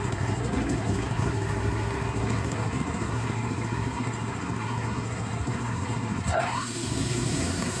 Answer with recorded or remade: remade